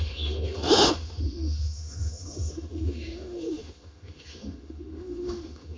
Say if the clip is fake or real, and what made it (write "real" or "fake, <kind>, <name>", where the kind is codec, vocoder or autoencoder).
fake, autoencoder, DAC-VAE